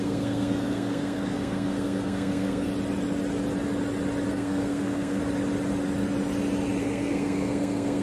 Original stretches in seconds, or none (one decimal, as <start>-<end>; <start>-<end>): 2.7-4.3; 5.2-6.8